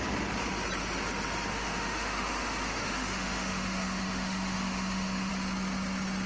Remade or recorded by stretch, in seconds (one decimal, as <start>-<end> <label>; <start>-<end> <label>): 0.0-1.5 recorded; 1.5-5.3 remade; 5.3-6.3 recorded